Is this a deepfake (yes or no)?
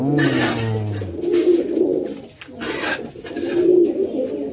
no